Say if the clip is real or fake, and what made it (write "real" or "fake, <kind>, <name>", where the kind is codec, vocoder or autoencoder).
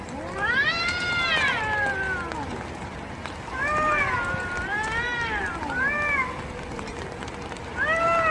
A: real